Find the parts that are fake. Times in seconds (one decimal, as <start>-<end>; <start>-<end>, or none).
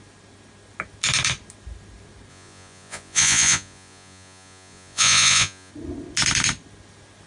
2.3-5.7